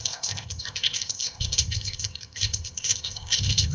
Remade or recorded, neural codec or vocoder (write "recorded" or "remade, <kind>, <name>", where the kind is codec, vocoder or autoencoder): remade, codec, ZipCodec